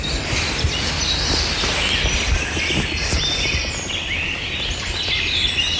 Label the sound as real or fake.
real